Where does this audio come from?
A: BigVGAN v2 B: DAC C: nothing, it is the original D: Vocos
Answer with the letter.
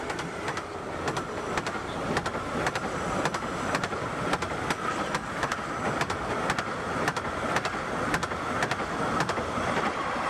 C